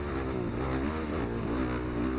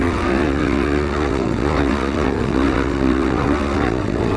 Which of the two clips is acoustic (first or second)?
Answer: first